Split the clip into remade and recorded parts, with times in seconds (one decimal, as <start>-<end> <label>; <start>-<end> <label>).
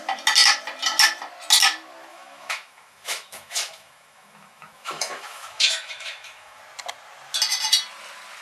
0.0-2.1 recorded; 2.1-6.6 remade; 6.6-8.4 recorded